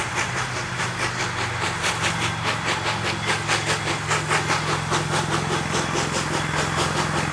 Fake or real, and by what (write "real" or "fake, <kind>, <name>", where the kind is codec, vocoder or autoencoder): real